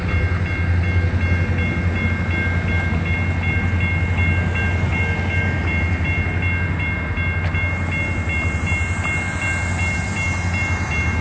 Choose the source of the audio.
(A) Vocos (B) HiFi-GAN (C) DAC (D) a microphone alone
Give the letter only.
D